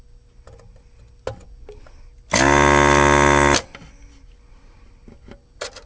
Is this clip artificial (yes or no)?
no